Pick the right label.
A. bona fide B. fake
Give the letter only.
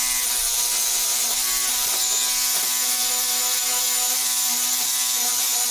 A